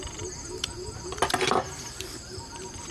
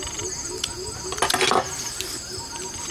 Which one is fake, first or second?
first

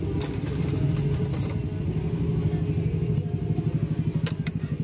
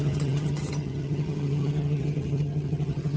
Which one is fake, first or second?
second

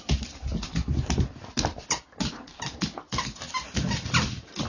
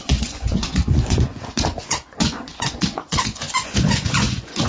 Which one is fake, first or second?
second